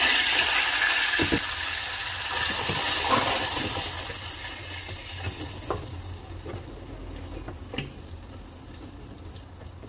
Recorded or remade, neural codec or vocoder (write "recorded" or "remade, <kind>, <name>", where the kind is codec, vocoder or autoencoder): recorded